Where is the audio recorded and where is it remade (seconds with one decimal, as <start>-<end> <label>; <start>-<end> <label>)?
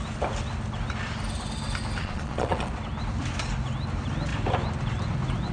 0.0-2.0 recorded; 2.0-2.7 remade; 2.7-5.5 recorded